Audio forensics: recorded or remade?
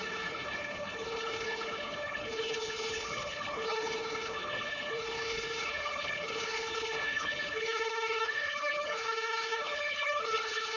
remade